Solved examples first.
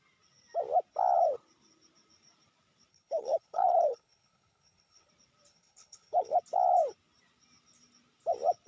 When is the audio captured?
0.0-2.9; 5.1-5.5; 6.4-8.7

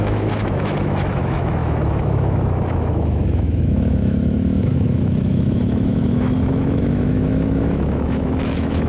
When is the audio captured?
none

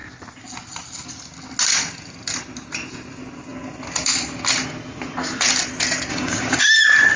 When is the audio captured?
0.0-6.1; 6.6-7.2

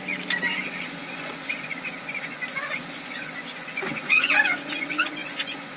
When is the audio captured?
0.0-0.5

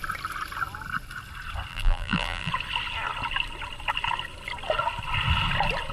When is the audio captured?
0.0-1.7; 2.5-5.9

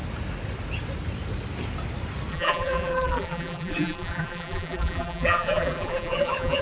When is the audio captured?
0.0-2.3

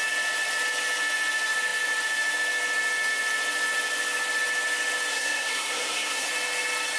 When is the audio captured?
0.0-5.1; 6.3-7.0